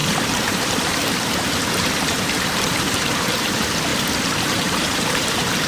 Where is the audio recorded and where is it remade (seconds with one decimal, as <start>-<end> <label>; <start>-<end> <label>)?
0.0-3.9 remade; 3.9-4.4 recorded; 4.4-5.7 remade